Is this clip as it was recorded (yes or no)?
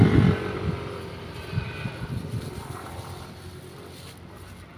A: yes